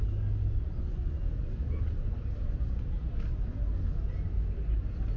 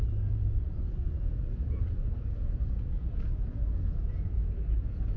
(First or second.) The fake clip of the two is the second